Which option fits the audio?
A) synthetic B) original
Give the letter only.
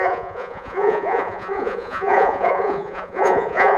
A